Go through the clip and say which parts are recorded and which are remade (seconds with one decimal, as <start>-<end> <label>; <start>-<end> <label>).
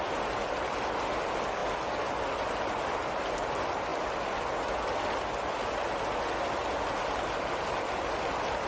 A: 0.0-8.7 recorded